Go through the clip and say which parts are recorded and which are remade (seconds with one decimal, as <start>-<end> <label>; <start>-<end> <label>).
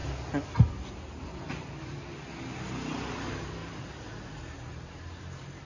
0.0-5.6 recorded